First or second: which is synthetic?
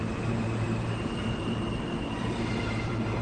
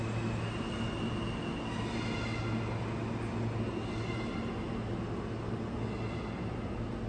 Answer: first